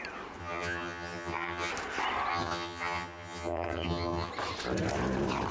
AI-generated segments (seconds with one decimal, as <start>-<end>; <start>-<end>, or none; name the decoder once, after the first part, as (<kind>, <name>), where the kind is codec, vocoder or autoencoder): 0.4-1.7 (vocoder, HiFi-GAN); 2.3-4.3